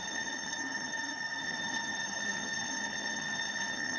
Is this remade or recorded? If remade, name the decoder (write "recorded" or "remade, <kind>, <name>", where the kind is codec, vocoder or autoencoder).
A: remade, vocoder, HiFi-GAN